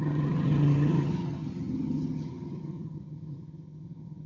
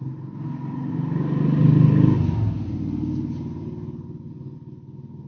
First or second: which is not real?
first